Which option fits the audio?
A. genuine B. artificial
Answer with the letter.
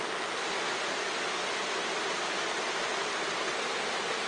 A